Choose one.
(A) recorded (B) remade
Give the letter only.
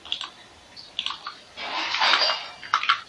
A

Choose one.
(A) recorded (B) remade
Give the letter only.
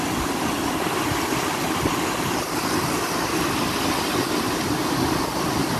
A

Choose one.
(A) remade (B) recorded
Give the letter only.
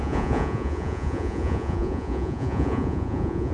A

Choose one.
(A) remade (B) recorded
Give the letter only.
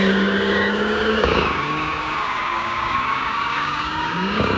A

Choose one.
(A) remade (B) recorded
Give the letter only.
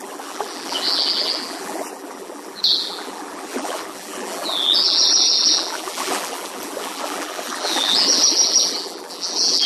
A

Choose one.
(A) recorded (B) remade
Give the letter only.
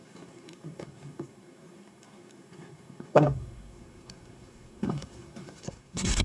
B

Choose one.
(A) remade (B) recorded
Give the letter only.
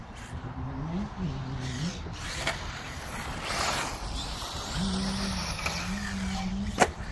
B